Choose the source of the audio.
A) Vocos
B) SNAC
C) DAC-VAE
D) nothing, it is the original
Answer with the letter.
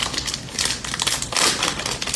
D